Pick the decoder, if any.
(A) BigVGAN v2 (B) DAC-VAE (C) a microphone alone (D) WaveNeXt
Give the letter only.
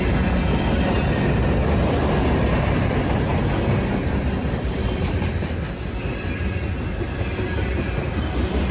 C